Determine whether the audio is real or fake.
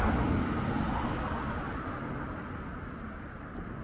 real